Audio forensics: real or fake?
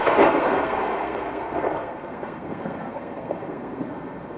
fake